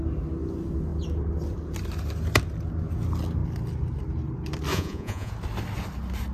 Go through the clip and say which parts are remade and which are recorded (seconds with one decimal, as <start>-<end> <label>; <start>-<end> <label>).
0.0-4.7 recorded; 4.7-5.3 remade; 5.3-6.3 recorded